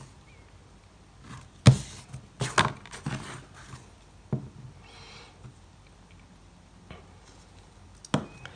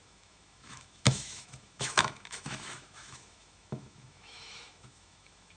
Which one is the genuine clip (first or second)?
first